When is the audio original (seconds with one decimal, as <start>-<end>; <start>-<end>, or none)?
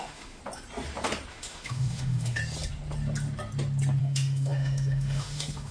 0.4-1.3; 2.4-4.0